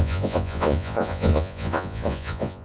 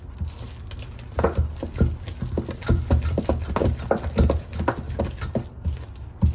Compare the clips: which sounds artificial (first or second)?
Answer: first